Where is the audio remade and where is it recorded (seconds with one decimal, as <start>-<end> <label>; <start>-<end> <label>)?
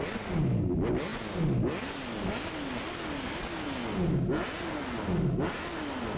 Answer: 0.0-6.2 recorded